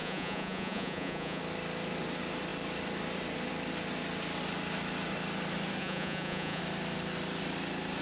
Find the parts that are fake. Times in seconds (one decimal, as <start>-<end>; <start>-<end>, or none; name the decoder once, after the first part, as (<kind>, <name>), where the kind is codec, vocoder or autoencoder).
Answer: 0.0-1.4 (vocoder, Vocos); 5.8-6.6

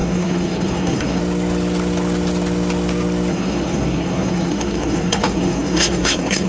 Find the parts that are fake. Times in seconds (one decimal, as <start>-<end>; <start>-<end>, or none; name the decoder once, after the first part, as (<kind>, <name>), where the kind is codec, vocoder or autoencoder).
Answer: 0.0-1.2 (codec, SNAC); 3.3-6.5

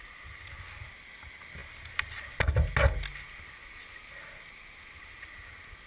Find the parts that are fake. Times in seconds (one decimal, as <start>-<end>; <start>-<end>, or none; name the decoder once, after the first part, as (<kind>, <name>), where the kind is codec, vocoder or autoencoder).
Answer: none

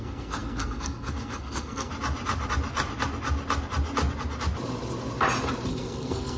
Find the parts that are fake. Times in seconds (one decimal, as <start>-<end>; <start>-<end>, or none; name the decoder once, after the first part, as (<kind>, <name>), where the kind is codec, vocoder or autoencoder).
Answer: 0.0-1.9 (codec, SNAC); 5.7-6.4